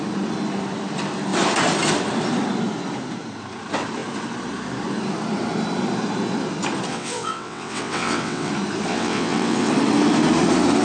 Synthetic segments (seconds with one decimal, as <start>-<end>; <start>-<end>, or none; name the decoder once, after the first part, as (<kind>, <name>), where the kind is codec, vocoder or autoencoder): 6.9-8.5 (vocoder, WaveNeXt); 8.9-9.7